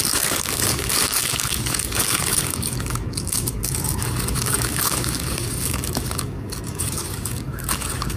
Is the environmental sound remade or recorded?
remade